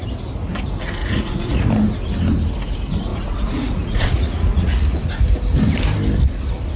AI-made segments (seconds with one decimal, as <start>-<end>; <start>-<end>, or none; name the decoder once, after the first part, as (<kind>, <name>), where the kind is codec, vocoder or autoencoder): 1.0-1.7 (vocoder, Vocos); 3.1-5.1